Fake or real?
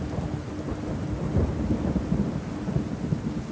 real